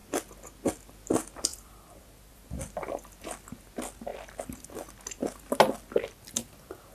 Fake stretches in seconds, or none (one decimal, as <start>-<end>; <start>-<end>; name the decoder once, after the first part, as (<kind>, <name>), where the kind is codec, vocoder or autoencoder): 1.5-2.5 (vocoder, BigVGAN v2)